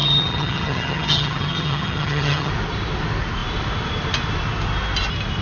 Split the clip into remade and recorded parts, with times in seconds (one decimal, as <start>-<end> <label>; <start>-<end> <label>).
0.0-2.5 remade; 2.5-5.4 recorded